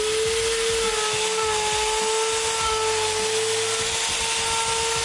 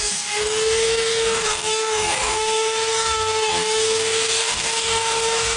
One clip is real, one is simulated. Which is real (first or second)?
first